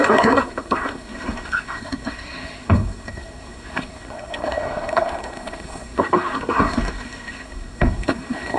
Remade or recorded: remade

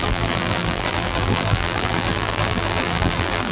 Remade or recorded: remade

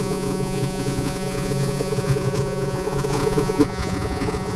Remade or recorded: remade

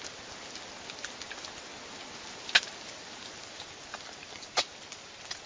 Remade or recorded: recorded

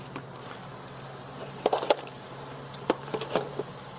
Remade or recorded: remade